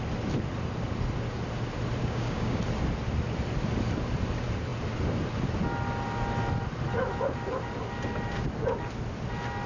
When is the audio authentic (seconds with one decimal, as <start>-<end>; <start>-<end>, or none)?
0.0-2.0; 2.6-9.7